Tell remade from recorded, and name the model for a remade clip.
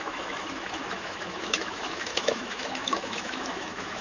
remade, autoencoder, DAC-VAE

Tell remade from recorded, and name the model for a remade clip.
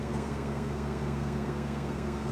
remade, codec, SNAC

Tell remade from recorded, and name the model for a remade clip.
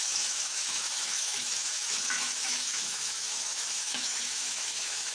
remade, autoencoder, DAC-VAE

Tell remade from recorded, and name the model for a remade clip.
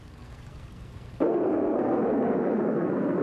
remade, codec, SNAC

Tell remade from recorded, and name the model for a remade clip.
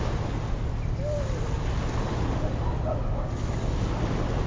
recorded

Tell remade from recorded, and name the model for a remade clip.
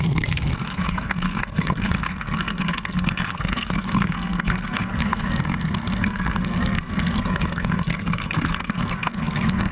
remade, codec, SNAC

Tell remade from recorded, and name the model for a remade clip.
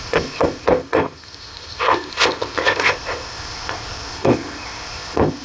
remade, codec, ZipCodec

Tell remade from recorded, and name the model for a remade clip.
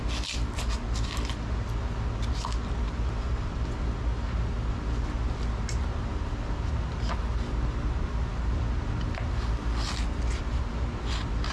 recorded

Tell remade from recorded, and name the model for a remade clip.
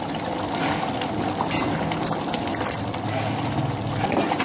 recorded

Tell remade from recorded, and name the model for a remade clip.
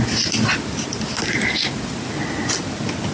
recorded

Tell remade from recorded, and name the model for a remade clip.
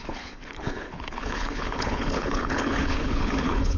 remade, codec, HILCodec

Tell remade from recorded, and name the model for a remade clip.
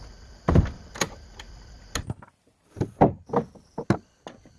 recorded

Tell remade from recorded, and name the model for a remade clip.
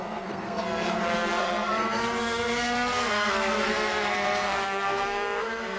remade, codec, SNAC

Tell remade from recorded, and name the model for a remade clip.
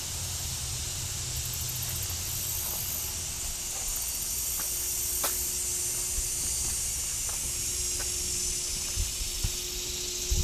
recorded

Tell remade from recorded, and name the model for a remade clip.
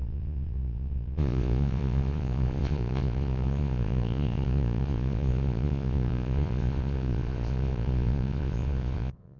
remade, vocoder, Vocos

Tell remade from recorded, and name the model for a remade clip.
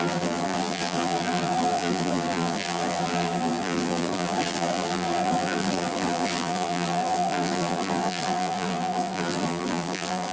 remade, vocoder, BigVGAN v2